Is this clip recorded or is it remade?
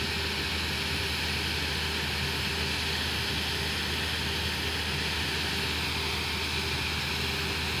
recorded